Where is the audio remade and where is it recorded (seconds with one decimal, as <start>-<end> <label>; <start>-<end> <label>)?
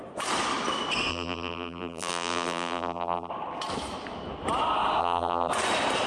0.0-1.1 recorded; 1.1-3.3 remade; 3.3-5.0 recorded; 5.0-5.5 remade; 5.5-6.1 recorded